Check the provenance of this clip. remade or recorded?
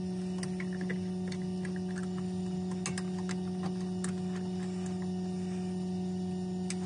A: recorded